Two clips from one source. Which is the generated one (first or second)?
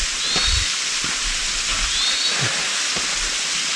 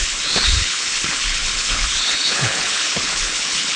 second